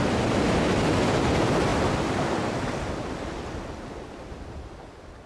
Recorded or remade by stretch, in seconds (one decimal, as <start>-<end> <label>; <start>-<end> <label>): 0.0-5.3 recorded